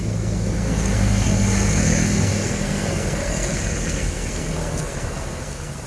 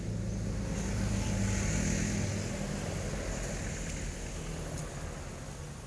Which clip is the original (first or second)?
second